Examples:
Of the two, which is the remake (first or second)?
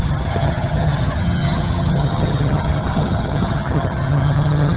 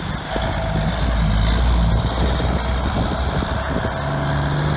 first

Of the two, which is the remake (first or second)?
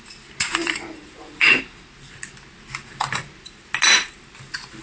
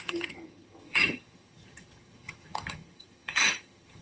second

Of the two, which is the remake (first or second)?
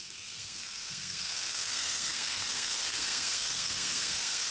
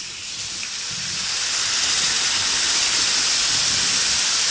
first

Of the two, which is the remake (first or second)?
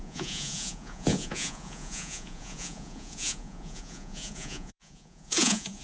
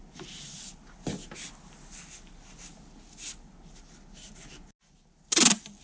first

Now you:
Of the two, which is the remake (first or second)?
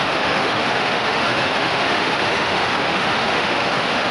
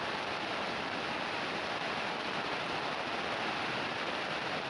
first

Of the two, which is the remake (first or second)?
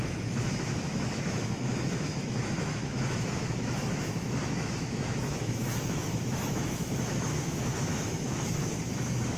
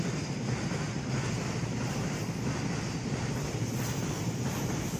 first